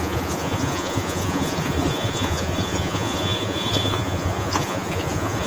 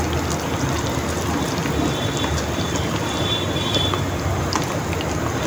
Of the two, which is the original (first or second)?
second